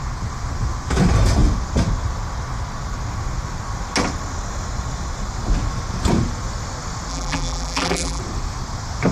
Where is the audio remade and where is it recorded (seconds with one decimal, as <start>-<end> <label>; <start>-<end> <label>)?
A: 0.0-7.1 recorded; 7.1-8.2 remade; 8.2-9.1 recorded